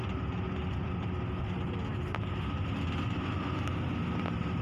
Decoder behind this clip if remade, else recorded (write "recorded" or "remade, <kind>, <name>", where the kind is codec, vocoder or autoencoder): recorded